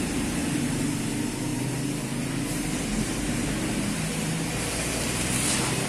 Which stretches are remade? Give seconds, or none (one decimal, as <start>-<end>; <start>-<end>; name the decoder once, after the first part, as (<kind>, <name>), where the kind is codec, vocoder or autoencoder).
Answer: 0.4-1.0 (vocoder, BigVGAN v2)